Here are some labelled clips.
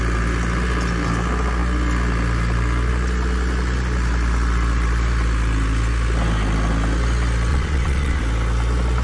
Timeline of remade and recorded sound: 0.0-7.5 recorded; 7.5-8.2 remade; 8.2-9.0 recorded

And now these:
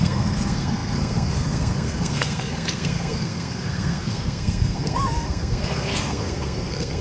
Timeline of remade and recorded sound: 0.0-7.0 remade

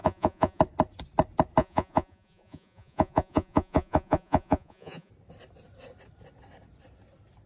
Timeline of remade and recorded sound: 0.0-0.6 remade; 0.6-1.6 recorded; 1.6-5.1 remade; 5.1-7.5 recorded